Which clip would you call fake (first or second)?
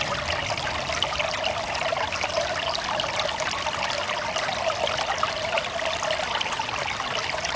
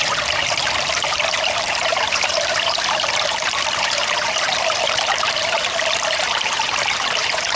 second